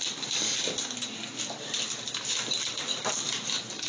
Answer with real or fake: real